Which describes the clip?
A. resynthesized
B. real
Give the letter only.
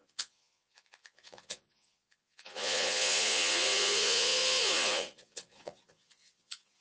A